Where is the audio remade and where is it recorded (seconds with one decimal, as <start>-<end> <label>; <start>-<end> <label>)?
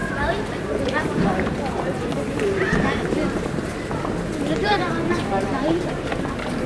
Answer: 0.0-3.5 remade; 3.5-4.6 recorded; 4.6-6.1 remade; 6.1-6.7 recorded